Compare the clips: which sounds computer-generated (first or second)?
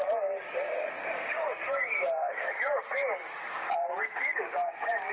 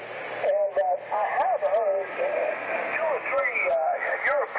first